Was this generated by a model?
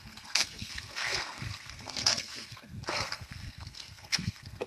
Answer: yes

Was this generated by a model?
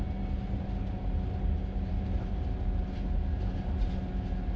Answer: no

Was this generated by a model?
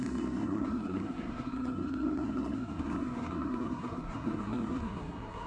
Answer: yes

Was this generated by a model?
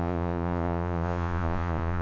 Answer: yes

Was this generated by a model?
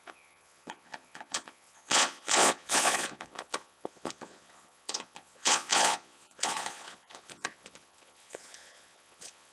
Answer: yes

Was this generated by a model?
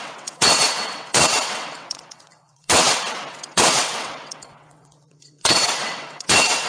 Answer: yes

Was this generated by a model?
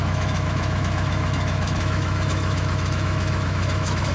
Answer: yes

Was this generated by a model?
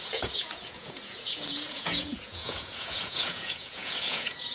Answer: yes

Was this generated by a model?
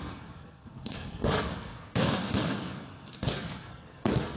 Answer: yes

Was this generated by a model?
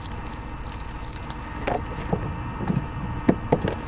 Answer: no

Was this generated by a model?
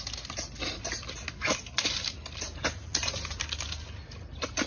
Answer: no